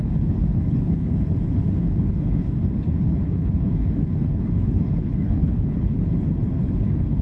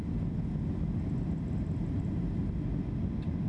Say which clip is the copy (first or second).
first